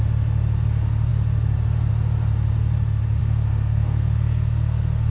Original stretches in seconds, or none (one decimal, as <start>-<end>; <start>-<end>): 0.0-3.2